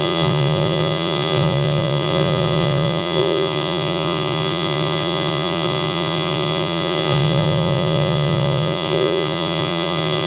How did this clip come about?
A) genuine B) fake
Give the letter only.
B